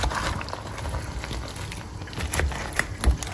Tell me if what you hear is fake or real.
real